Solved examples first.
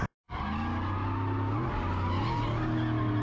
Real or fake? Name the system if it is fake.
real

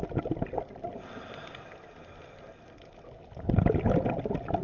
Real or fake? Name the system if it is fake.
real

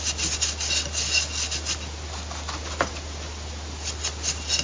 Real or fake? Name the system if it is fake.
real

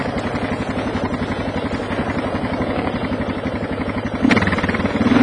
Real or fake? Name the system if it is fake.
real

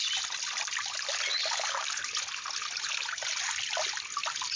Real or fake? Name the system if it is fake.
real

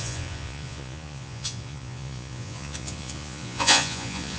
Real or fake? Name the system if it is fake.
fake, vocoder, Vocos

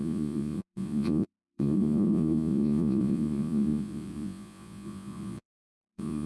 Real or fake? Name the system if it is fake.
fake, vocoder, Vocos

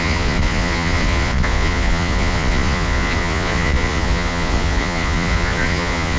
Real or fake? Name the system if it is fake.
fake, vocoder, Vocos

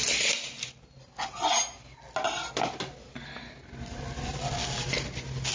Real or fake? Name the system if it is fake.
real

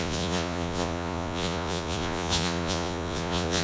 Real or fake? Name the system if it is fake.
fake, vocoder, Vocos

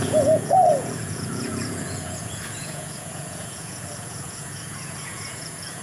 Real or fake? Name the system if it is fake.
fake, vocoder, Vocos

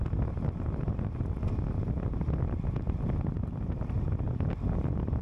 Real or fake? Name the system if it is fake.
real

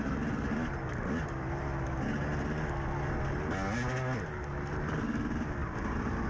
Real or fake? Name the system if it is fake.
real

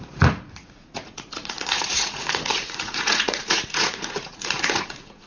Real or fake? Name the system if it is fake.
fake, vocoder, Vocos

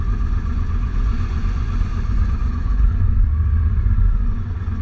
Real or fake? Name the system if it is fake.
fake, vocoder, Vocos